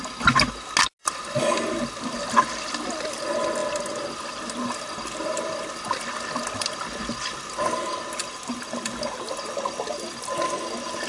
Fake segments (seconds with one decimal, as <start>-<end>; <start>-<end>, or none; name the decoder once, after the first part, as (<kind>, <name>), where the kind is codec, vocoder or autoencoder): none

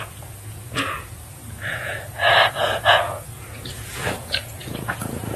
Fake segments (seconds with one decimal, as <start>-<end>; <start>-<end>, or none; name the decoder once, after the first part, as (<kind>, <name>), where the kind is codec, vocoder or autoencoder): 0.0-5.4 (vocoder, Vocos)

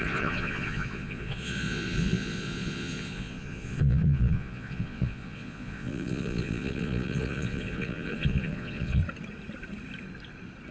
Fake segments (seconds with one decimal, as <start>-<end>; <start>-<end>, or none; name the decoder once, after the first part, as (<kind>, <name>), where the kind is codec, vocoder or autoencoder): 0.0-9.0 (vocoder, Vocos)

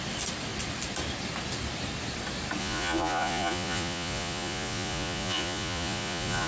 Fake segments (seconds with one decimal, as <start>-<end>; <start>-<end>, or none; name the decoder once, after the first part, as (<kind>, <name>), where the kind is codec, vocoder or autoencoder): 2.6-6.5 (vocoder, Vocos)

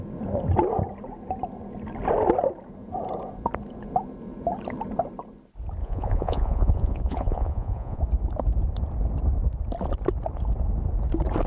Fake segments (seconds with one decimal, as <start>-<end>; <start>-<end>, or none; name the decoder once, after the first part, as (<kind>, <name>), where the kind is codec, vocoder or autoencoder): 5.8-8.0 (vocoder, Vocos)

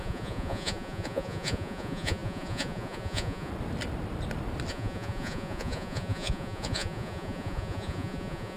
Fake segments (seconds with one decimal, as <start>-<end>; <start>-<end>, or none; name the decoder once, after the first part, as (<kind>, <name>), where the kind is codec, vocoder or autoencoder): 0.0-3.5 (vocoder, Vocos); 4.7-8.6

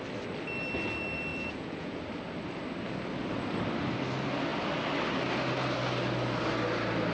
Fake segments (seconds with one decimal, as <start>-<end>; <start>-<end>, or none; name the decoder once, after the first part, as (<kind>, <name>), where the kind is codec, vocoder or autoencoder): 1.3-2.0 (vocoder, Vocos)